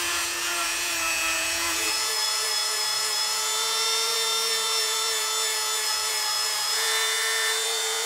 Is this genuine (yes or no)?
no